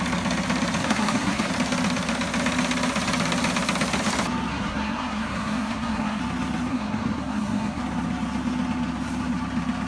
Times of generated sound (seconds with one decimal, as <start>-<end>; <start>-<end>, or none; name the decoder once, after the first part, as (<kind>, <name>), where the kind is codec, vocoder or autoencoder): 0.8-1.5 (codec, SNAC); 4.5-6.2; 6.7-7.8